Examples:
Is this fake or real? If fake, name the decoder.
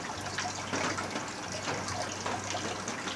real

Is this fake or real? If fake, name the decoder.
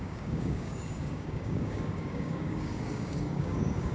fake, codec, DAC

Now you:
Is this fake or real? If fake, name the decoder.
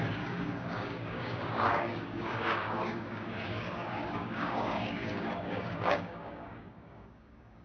fake, codec, DAC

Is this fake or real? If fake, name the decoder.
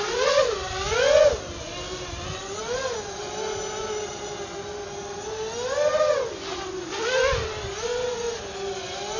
real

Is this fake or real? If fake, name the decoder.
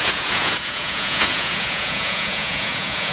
fake, vocoder, Vocos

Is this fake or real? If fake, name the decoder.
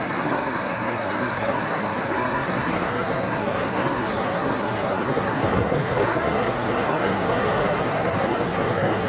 fake, codec, SNAC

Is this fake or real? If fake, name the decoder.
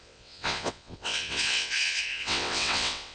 fake, vocoder, WaveNeXt